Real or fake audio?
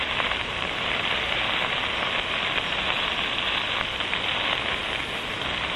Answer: real